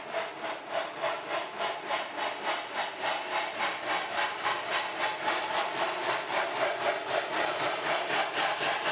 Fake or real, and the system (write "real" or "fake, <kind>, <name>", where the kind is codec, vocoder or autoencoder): real